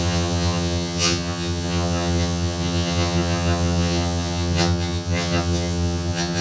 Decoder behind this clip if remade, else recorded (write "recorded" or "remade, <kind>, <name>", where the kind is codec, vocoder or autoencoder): remade, vocoder, HiFi-GAN